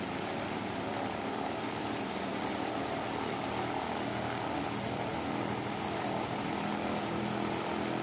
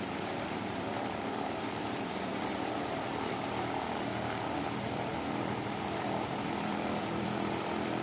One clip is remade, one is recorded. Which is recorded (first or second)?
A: first